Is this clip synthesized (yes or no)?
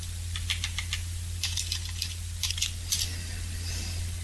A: yes